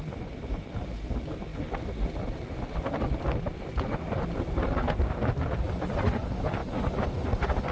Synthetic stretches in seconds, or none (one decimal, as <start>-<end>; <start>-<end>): none